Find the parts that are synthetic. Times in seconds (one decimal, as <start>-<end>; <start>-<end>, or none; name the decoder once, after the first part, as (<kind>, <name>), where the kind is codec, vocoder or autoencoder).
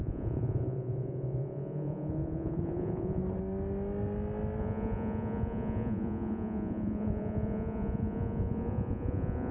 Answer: 0.0-3.2 (vocoder, Vocos); 4.6-9.5